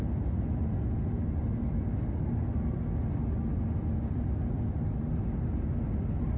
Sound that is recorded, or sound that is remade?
recorded